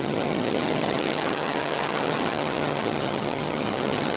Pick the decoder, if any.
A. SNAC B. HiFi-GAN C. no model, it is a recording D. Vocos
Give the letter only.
B